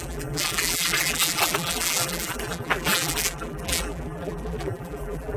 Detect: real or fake fake